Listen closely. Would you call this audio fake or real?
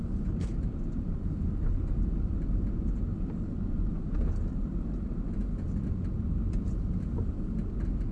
real